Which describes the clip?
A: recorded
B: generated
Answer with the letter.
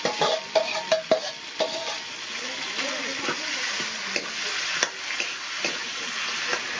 A